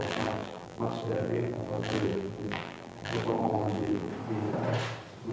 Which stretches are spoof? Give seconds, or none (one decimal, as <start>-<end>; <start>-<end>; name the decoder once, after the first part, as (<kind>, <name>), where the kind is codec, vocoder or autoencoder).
0.0-4.1 (vocoder, BigVGAN v2)